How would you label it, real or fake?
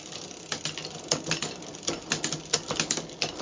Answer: real